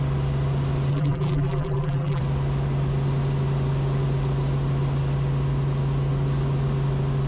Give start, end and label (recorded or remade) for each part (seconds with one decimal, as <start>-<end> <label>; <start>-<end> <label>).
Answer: 0.0-0.9 recorded; 0.9-2.2 remade; 2.2-7.3 recorded